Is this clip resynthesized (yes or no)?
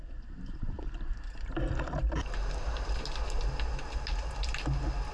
no